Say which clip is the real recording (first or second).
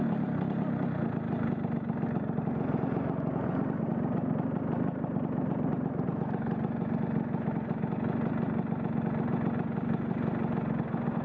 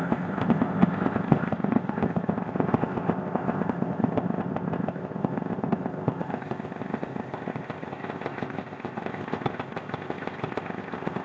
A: first